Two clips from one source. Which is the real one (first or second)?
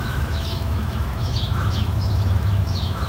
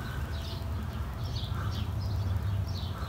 second